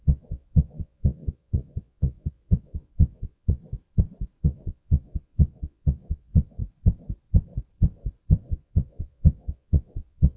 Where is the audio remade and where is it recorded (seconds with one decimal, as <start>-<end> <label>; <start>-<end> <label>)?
0.0-3.6 remade; 3.6-4.4 recorded; 4.4-6.6 remade; 6.6-8.5 recorded; 8.5-10.4 remade